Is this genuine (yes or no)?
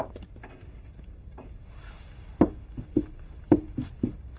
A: yes